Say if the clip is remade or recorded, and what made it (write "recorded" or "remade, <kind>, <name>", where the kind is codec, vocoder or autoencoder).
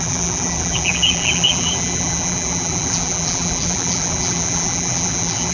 remade, vocoder, BigVGAN v2